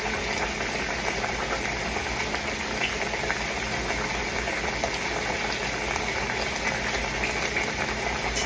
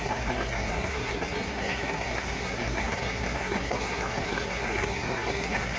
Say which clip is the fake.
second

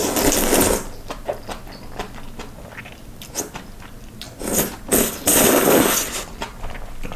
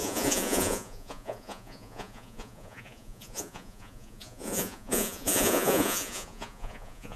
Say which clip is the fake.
second